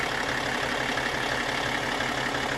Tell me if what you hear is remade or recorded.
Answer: recorded